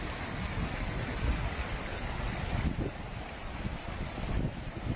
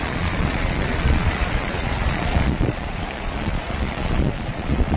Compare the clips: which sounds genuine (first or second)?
first